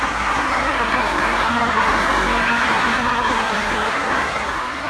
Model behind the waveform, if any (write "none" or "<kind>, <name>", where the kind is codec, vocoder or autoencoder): codec, SNAC